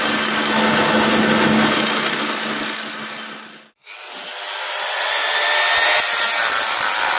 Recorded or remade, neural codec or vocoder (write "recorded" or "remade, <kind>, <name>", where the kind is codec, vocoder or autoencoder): recorded